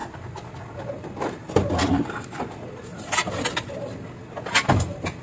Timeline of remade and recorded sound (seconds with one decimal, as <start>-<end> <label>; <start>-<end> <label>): 0.0-5.2 recorded